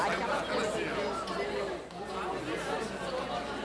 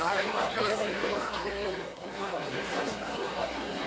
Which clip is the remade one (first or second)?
second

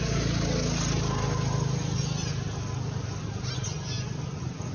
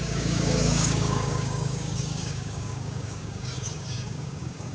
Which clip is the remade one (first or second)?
second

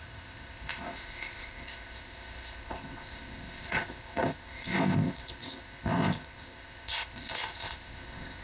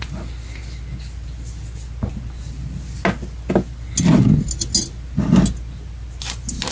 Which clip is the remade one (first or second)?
first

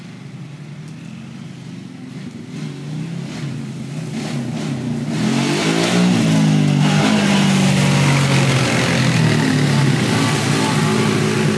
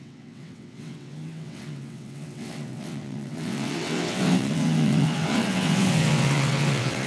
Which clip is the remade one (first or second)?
second